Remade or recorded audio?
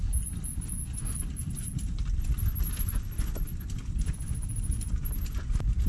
recorded